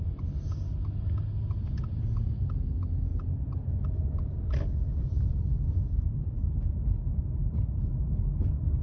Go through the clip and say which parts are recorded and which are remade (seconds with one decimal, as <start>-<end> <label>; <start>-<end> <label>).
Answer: 0.0-8.8 recorded